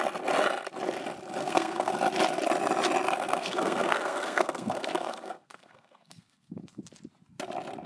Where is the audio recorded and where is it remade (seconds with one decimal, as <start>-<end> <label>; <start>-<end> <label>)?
0.0-1.4 recorded; 1.4-1.9 remade; 1.9-3.3 recorded; 3.3-6.8 remade; 6.8-7.9 recorded